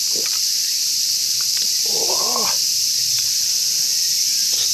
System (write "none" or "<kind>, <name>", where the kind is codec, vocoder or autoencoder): vocoder, BigVGAN v2